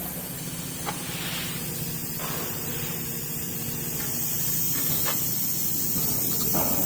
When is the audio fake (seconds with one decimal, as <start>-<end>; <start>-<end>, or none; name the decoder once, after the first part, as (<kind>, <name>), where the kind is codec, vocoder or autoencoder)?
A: 2.0-3.6 (vocoder, BigVGAN v2)